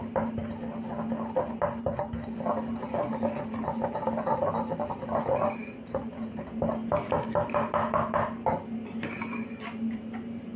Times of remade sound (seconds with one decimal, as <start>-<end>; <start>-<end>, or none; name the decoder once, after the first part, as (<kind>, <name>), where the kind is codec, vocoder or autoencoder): none